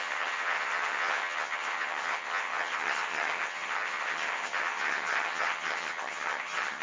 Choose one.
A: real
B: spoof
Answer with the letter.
B